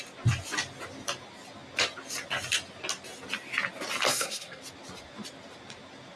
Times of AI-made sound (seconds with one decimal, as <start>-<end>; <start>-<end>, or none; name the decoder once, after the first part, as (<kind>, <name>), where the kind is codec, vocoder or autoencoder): 4.1-4.6 (codec, SNAC)